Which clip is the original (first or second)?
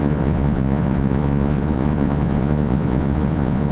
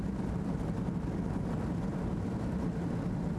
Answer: second